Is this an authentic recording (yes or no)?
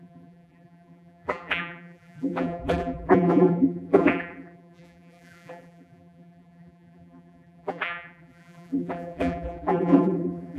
no